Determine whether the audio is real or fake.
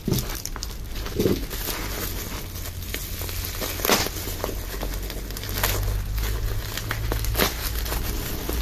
real